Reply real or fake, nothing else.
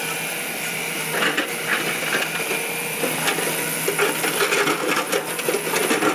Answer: real